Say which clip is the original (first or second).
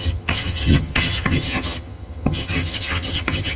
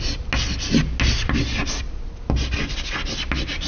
second